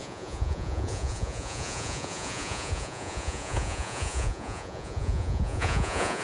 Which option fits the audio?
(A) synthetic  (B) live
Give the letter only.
A